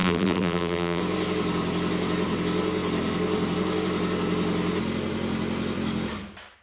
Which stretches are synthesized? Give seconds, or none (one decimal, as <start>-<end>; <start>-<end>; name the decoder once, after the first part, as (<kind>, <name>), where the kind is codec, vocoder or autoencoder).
0.0-1.0 (vocoder, BigVGAN v2)